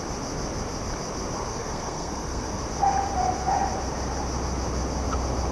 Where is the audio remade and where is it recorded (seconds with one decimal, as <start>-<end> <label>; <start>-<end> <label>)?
0.0-1.5 recorded; 1.5-2.6 remade; 2.6-5.5 recorded